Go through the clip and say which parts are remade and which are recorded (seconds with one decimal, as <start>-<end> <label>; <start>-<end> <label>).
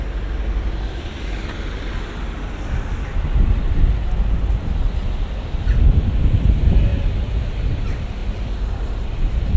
0.0-6.9 recorded; 6.9-7.5 remade; 7.5-8.2 recorded; 8.2-9.6 remade